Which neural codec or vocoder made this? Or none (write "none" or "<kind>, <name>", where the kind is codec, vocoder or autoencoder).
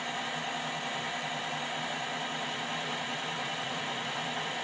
none